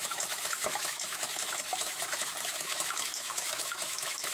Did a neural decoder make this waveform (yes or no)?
yes